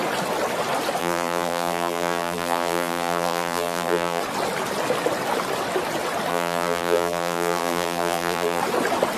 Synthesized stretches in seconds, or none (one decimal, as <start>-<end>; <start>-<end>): 1.0-4.2; 6.3-8.6